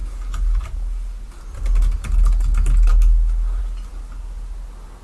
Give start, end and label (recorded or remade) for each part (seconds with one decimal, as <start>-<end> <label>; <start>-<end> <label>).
0.0-5.0 recorded